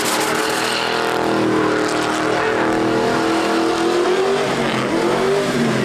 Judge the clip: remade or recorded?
recorded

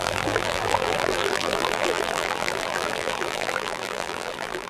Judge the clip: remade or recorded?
remade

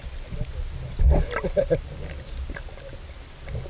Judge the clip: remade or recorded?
recorded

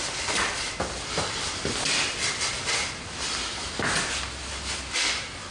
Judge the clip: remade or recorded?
recorded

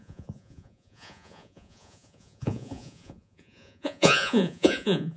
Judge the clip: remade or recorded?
remade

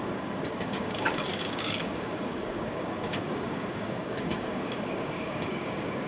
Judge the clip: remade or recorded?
remade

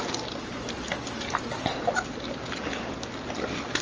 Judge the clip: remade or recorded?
recorded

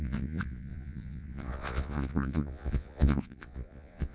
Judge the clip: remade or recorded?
remade